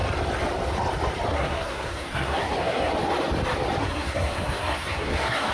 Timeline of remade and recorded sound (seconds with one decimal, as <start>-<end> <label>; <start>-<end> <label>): 0.0-1.3 recorded; 1.3-2.9 remade; 2.9-3.8 recorded; 3.8-5.5 remade